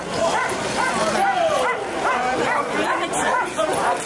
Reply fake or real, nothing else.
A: real